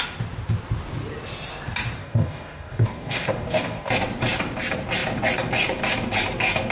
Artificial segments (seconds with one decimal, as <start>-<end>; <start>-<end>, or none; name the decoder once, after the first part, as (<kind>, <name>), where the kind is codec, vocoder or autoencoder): 2.0-3.9 (codec, DAC)